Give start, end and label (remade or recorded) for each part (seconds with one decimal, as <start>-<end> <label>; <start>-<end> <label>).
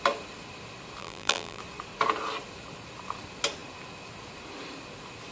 0.0-1.0 recorded; 1.0-1.6 remade; 1.6-5.3 recorded